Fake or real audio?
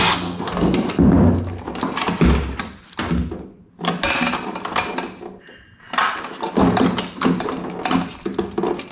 real